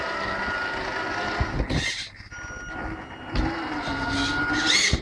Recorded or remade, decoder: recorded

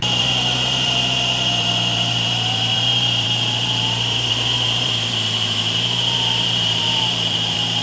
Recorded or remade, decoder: remade, vocoder, BigVGAN v2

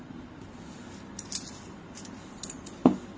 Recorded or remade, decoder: recorded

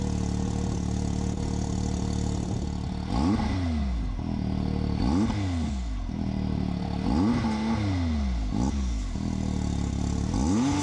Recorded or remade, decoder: recorded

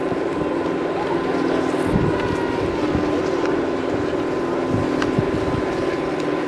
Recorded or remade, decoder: recorded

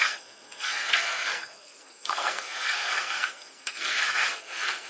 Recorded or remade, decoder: remade, codec, SNAC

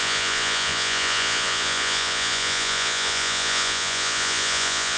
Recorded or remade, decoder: remade, vocoder, Vocos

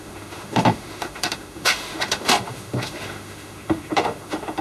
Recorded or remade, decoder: remade, autoencoder, DAC-VAE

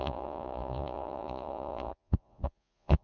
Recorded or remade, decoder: remade, vocoder, Vocos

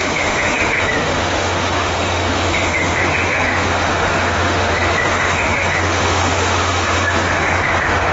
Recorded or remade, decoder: remade, autoencoder, DAC-VAE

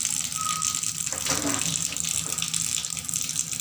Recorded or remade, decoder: recorded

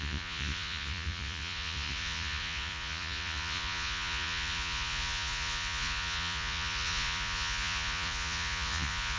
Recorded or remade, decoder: remade, vocoder, Vocos